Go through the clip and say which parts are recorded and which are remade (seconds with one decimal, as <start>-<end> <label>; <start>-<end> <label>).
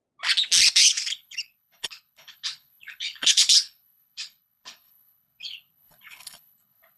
0.0-0.7 recorded; 0.7-7.0 remade